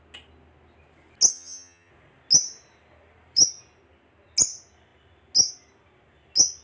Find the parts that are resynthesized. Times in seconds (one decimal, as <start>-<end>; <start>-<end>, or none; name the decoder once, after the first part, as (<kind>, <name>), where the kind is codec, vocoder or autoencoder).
1.3-1.9 (vocoder, HiFi-GAN)